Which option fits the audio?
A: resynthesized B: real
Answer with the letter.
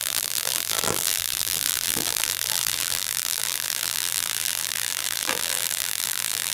A